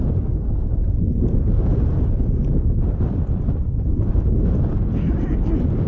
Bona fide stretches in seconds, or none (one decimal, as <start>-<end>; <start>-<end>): 0.0-0.6; 4.1-5.9